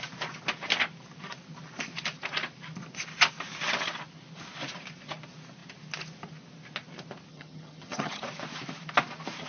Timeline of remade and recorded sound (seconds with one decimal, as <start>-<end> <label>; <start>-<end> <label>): 0.0-7.3 recorded; 7.3-8.2 remade; 8.2-9.5 recorded